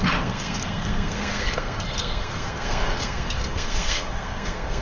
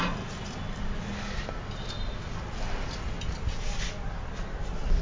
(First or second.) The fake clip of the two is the first